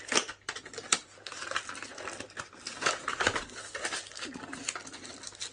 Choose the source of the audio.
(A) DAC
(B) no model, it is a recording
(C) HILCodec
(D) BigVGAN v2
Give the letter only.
B